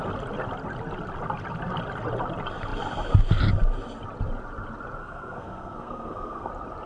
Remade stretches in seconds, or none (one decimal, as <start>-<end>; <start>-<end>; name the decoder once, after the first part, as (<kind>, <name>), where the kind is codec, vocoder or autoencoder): 5.0-6.5 (codec, SNAC)